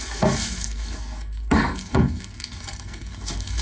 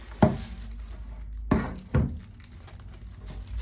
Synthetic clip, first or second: first